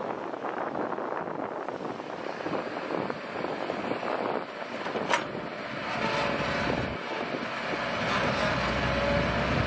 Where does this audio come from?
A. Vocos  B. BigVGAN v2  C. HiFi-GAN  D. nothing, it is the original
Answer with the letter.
D